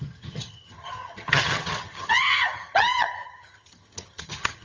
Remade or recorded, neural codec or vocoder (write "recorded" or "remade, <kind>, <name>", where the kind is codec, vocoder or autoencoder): remade, vocoder, HiFi-GAN